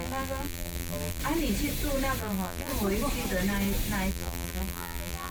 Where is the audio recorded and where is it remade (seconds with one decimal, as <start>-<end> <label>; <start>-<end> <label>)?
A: 0.0-1.2 remade; 1.2-2.2 recorded; 2.2-2.7 remade; 2.7-4.1 recorded; 4.1-5.3 remade